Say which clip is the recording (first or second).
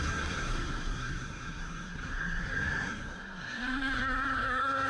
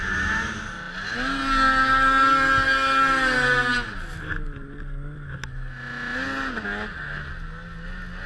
second